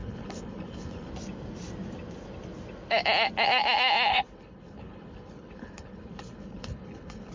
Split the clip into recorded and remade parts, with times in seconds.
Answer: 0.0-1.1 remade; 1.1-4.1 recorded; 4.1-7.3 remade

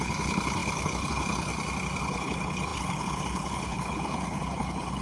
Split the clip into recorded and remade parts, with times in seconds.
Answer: 0.0-1.5 remade; 1.5-2.0 recorded; 2.0-5.0 remade

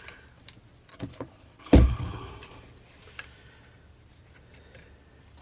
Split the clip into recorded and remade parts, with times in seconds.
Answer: 0.0-0.9 recorded; 0.9-2.3 remade; 2.3-5.4 recorded

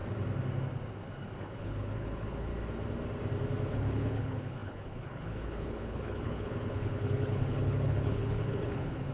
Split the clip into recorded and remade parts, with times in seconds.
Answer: 0.0-1.4 recorded; 1.4-2.5 remade; 2.5-3.7 recorded; 3.7-9.1 remade

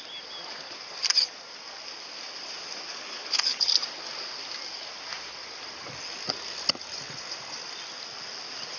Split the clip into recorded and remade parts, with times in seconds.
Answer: 0.0-2.9 recorded; 2.9-3.7 remade; 3.7-8.8 recorded

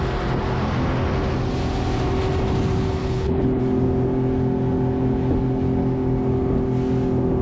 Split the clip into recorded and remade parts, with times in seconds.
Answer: 0.0-3.0 recorded; 3.0-3.6 remade; 3.6-7.4 recorded

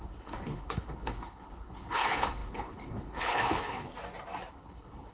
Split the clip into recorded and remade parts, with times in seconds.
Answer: 0.0-3.9 remade; 3.9-4.5 recorded; 4.5-5.1 remade